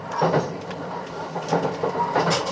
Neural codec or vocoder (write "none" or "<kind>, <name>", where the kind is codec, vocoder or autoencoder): none